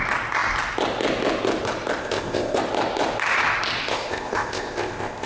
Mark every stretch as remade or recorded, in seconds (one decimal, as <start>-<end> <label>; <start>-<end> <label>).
0.0-2.0 recorded; 2.0-2.6 remade; 2.6-3.8 recorded; 3.8-5.3 remade

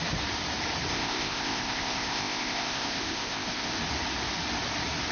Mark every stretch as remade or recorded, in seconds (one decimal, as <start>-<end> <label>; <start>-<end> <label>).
0.0-0.9 recorded; 0.9-3.7 remade; 3.7-5.1 recorded

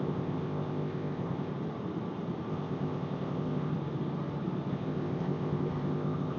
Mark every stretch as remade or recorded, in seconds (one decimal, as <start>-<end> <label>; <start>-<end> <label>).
0.0-1.5 remade; 1.5-2.5 recorded; 2.5-3.7 remade; 3.7-4.7 recorded; 4.7-6.4 remade

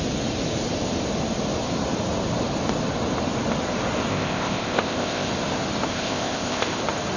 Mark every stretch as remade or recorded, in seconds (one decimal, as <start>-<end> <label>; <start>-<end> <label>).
0.0-4.1 recorded; 4.1-5.3 remade; 5.3-5.9 recorded; 5.9-6.8 remade; 6.8-7.2 recorded

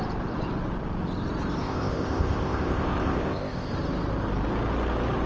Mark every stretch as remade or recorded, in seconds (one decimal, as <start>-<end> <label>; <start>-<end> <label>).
0.0-1.6 recorded; 1.6-3.7 remade; 3.7-5.3 recorded

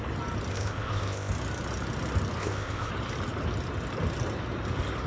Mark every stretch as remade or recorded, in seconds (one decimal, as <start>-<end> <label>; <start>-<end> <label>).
0.0-0.5 recorded; 0.5-1.3 remade; 1.3-2.4 recorded; 2.4-2.9 remade; 2.9-5.1 recorded

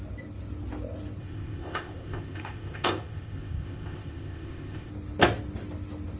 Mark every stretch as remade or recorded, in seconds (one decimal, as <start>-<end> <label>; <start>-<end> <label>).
0.0-1.2 recorded; 1.2-4.9 remade; 4.9-6.2 recorded